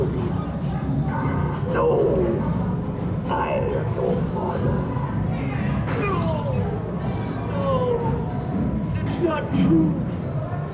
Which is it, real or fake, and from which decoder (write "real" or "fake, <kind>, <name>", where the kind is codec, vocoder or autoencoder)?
real